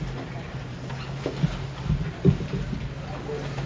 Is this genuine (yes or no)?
yes